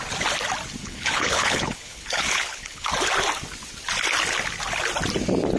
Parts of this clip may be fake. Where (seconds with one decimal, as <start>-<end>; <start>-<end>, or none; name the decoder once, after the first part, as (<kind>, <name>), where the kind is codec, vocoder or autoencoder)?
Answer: 0.8-2.9 (codec, HILCodec)